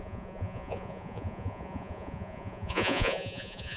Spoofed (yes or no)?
yes